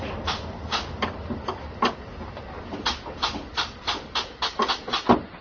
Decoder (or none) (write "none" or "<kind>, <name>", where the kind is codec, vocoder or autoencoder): none